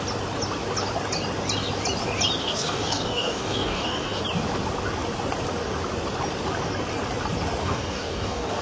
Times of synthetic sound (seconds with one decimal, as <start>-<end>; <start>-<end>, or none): 2.4-4.2; 7.6-8.6